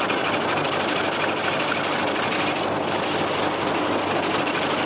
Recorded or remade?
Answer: recorded